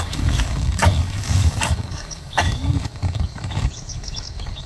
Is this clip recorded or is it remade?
remade